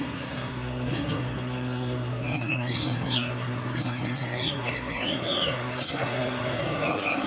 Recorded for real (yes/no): no